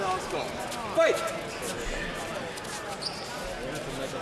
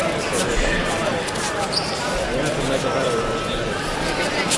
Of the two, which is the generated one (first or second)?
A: second